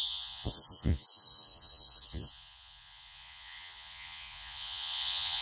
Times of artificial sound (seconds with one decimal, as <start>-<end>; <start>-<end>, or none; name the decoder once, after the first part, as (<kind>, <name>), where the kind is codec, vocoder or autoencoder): 0.0-5.4 (vocoder, Vocos)